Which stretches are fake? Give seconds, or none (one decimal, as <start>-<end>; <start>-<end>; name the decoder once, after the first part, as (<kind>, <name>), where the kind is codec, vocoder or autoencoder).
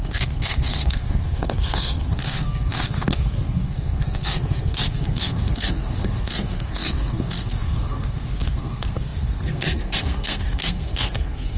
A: 0.0-11.6 (codec, SNAC)